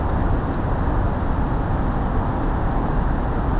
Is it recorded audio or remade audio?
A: recorded